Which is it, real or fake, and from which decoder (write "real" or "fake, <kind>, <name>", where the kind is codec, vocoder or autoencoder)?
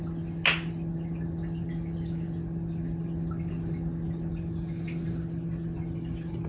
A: real